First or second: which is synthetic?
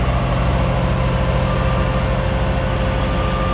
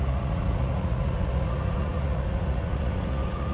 second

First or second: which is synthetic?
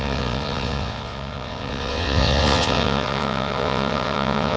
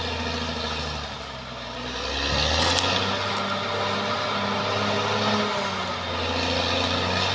first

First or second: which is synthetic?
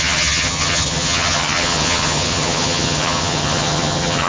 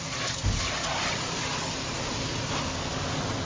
first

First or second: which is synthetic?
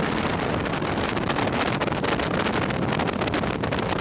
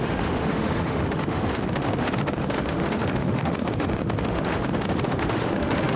second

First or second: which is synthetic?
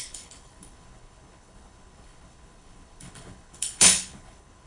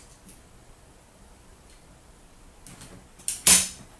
first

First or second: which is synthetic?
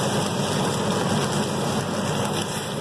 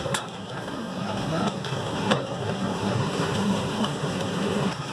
second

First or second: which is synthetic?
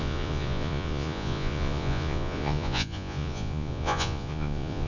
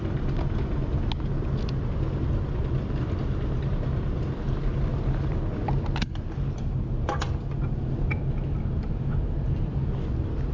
first